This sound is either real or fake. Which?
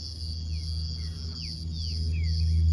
real